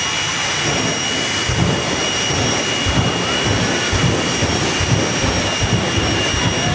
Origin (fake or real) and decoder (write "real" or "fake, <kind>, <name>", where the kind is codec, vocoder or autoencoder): real